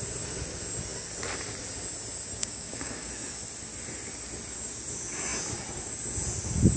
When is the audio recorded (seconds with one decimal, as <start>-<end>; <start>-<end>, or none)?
0.0-2.4; 3.1-6.8

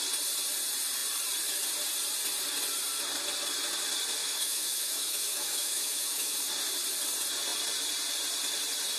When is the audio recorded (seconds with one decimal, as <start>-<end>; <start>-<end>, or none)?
0.0-4.2; 6.4-9.0